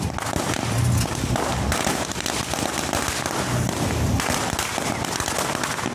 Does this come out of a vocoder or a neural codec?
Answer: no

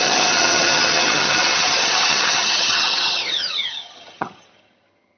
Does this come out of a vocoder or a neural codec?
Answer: yes